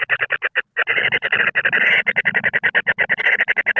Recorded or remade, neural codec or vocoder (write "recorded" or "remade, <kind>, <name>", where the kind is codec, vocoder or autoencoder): recorded